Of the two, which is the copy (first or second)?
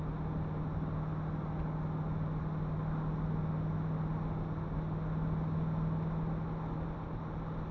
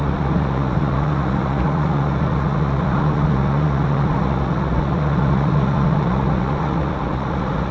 second